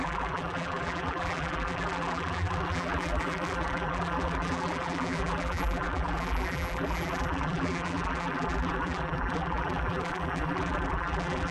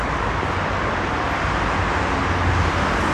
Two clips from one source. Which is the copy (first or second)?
first